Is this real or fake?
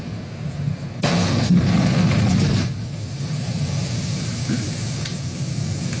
real